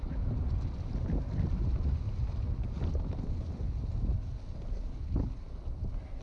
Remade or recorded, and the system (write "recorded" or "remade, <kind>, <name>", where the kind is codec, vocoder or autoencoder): recorded